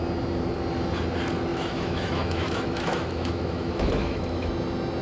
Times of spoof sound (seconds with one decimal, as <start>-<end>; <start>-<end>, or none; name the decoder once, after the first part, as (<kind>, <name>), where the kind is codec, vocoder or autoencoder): 1.5-4.5 (autoencoder, DAC-VAE)

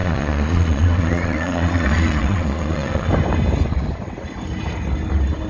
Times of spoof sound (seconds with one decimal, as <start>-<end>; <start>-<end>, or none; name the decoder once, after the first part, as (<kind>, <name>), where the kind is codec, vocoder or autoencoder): 0.0-3.1 (vocoder, Vocos)